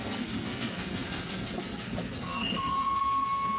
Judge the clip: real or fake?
fake